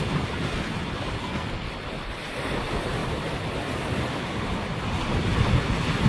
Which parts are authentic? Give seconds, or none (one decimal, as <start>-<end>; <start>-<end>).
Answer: 0.0-1.2; 1.7-6.1